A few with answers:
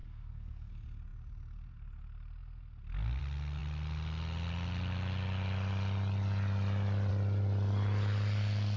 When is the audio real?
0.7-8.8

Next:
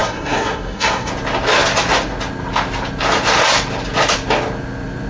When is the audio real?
1.1-5.1

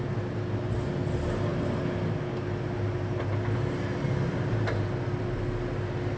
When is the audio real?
0.0-6.2

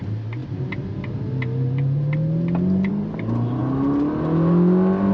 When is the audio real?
0.0-5.1